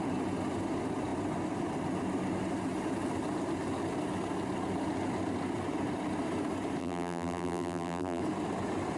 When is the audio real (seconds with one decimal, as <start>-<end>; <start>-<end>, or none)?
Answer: 0.0-6.8; 8.2-9.0